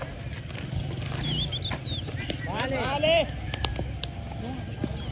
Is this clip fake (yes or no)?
no